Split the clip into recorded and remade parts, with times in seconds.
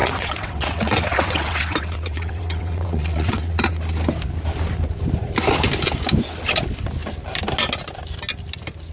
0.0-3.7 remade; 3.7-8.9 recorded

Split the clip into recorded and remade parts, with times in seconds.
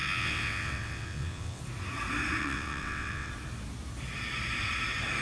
0.0-1.6 remade; 1.6-2.4 recorded; 2.4-3.3 remade; 3.3-5.2 recorded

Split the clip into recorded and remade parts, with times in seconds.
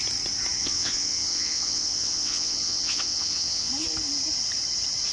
0.0-0.6 recorded; 0.6-3.7 remade; 3.7-5.1 recorded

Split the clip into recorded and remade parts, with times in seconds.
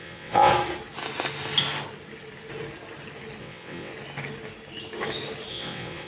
0.0-0.5 remade; 0.5-3.4 recorded; 3.4-3.9 remade; 3.9-5.5 recorded; 5.5-6.1 remade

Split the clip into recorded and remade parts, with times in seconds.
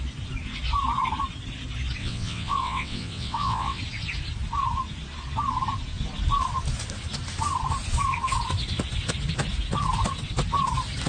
0.0-2.0 recorded; 2.0-3.8 remade; 3.8-11.1 recorded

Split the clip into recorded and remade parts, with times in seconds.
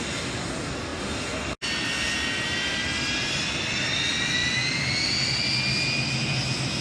0.0-6.8 recorded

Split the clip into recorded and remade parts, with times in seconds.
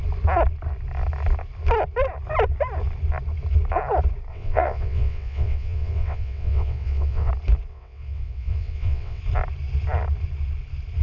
0.0-4.3 recorded; 4.3-7.3 remade; 7.3-7.7 recorded; 7.7-9.2 remade; 9.2-11.0 recorded